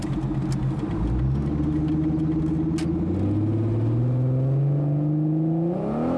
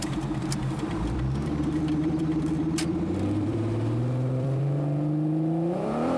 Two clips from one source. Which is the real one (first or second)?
first